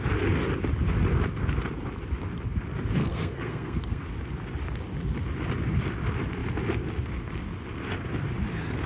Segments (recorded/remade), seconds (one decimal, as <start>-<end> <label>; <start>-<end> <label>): 0.0-3.0 recorded; 3.0-4.0 remade; 4.0-8.9 recorded

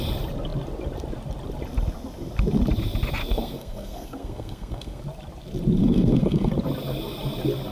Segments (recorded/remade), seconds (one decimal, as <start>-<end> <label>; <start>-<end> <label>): 0.0-3.2 recorded; 3.2-5.0 remade; 5.0-5.8 recorded; 5.8-6.5 remade; 6.5-7.7 recorded

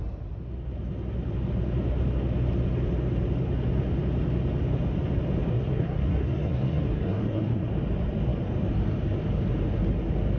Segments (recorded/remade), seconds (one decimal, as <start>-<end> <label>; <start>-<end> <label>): 0.0-5.5 recorded; 5.5-7.7 remade; 7.7-10.4 recorded

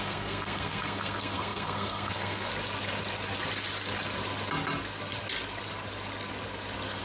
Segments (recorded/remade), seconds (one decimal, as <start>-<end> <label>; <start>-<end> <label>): 0.0-2.5 remade; 2.5-7.0 recorded

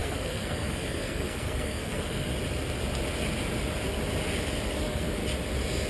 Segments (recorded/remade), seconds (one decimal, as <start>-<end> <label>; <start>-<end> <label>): 0.0-2.3 remade; 2.3-4.8 recorded; 4.8-5.2 remade; 5.2-5.9 recorded